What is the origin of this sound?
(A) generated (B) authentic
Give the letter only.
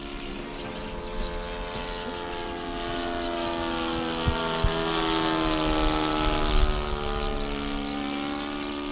B